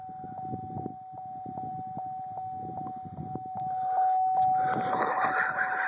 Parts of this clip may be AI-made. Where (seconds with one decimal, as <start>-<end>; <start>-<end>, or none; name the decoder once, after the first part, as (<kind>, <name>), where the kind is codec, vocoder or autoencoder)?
none